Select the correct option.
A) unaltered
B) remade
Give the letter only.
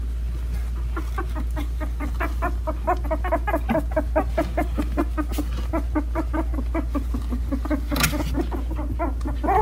A